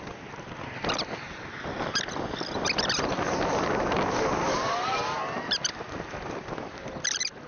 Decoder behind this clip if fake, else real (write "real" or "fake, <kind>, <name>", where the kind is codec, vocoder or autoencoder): real